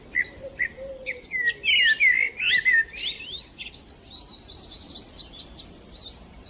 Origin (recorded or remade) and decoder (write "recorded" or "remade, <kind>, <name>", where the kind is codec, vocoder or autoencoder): recorded